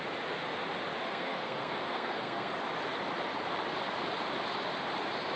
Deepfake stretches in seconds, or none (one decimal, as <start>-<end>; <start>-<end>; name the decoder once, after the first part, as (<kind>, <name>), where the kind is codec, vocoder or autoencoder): 1.0-2.5 (codec, SNAC)